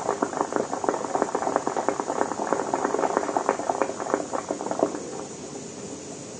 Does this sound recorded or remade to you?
recorded